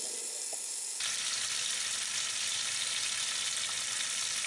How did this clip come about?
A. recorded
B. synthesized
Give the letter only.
A